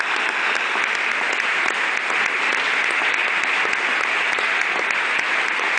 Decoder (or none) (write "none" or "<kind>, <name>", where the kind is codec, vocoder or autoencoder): none